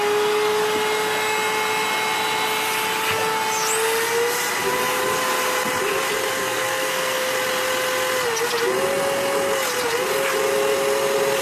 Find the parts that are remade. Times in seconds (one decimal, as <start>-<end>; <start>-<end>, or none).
6.4-7.3